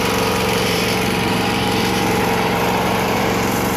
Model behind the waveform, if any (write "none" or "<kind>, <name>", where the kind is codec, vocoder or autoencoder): vocoder, BigVGAN v2